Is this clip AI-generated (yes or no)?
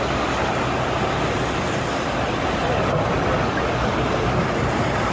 no